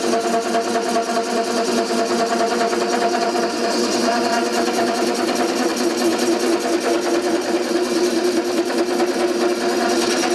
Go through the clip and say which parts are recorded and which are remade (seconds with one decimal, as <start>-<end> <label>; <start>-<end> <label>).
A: 0.0-10.3 recorded